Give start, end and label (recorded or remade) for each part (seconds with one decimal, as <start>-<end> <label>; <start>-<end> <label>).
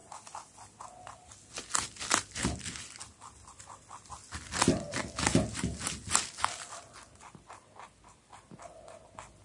0.0-9.4 recorded